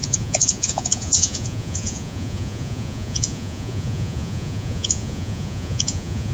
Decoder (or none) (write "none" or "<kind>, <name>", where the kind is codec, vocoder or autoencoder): vocoder, Vocos